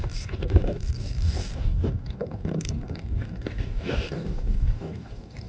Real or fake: fake